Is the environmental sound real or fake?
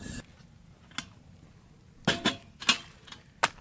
real